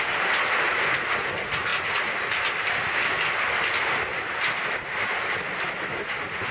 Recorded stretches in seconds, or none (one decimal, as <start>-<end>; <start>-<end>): 0.0-6.5